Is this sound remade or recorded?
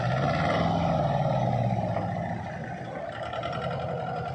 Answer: recorded